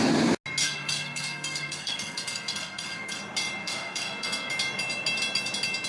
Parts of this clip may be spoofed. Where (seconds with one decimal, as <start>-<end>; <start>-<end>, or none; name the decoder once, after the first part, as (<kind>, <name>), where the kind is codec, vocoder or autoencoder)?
0.6-3.2 (codec, SNAC); 3.6-4.5